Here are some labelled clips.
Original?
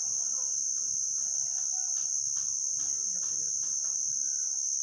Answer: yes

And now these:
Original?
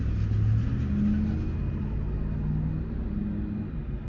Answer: yes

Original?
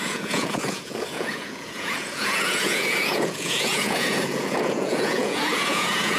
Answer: no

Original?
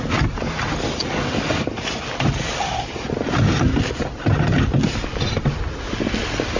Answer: yes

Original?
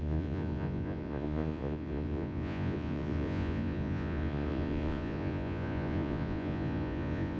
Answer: no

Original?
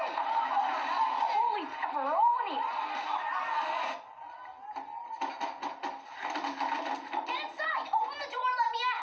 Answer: yes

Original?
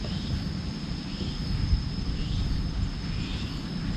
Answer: yes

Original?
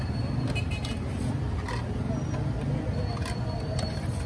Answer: yes